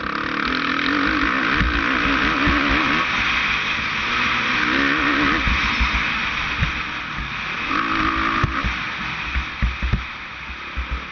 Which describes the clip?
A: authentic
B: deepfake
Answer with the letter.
A